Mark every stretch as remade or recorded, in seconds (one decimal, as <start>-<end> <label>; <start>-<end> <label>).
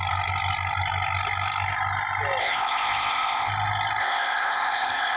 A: 0.0-2.4 recorded; 2.4-3.5 remade; 3.5-4.0 recorded; 4.0-5.2 remade